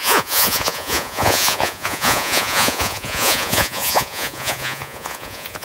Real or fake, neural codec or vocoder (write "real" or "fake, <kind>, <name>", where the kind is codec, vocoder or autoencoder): fake, vocoder, Vocos